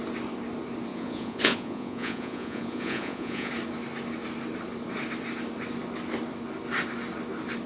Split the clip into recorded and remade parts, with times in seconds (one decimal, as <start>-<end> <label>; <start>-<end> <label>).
0.0-0.9 recorded; 0.9-3.5 remade; 3.5-7.7 recorded